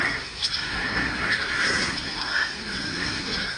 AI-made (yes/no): yes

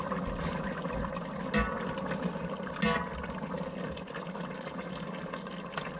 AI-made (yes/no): no